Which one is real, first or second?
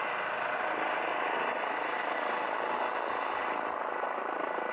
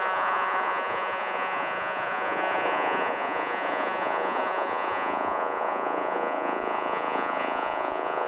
first